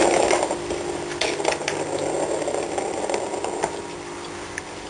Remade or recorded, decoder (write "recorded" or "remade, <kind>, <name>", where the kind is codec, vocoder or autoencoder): remade, vocoder, BigVGAN v2